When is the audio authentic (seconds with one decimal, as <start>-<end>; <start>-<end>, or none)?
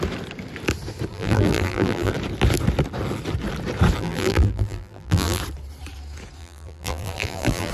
0.0-1.1; 2.1-4.0; 5.4-6.4